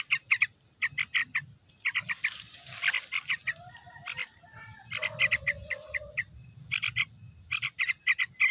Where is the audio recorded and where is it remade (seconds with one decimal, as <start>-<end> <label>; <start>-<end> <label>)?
0.0-8.5 recorded